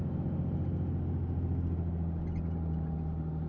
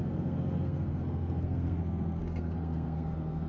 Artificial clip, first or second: second